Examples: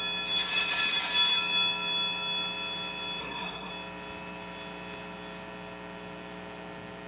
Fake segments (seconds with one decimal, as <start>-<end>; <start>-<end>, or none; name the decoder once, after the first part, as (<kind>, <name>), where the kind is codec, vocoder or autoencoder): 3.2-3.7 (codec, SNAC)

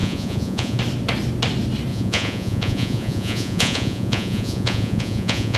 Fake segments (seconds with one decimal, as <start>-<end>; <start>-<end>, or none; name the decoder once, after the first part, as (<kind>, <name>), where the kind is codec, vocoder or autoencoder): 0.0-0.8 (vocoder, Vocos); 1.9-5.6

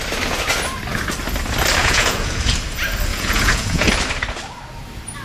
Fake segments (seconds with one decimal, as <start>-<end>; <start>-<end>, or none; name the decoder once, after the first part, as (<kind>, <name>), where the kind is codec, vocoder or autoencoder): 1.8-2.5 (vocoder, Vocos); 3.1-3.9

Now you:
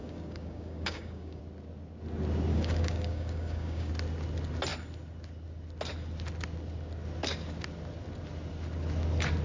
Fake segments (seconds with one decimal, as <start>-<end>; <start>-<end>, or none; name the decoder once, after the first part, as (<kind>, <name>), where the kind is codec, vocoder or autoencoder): 0.0-1.4 (codec, DAC); 2.5-3.9

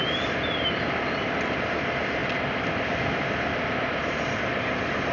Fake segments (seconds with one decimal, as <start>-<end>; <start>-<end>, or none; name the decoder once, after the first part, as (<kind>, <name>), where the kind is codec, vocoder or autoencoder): none

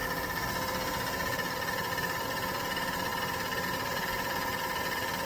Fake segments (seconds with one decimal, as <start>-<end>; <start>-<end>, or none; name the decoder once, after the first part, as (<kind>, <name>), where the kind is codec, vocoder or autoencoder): none

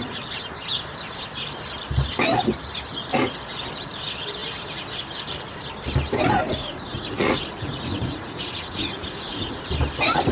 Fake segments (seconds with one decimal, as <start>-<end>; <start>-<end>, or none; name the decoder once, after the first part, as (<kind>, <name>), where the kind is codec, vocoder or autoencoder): 6.6-9.6 (vocoder, Vocos)